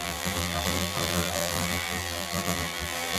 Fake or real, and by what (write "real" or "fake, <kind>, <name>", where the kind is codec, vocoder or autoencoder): fake, vocoder, BigVGAN v2